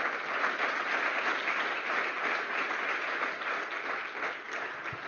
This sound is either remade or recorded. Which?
recorded